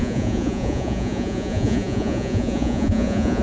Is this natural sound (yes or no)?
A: no